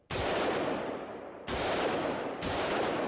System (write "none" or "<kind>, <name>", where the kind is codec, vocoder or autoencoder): vocoder, BigVGAN v2